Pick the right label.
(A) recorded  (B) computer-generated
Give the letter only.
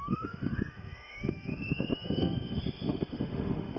B